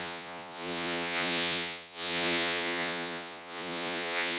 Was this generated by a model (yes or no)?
yes